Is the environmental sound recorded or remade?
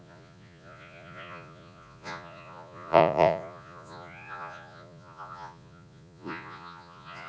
remade